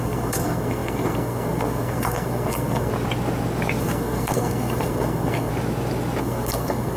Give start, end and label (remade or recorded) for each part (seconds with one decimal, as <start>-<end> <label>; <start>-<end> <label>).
0.0-2.9 remade; 2.9-3.8 recorded; 3.8-5.5 remade; 5.5-6.2 recorded; 6.2-7.0 remade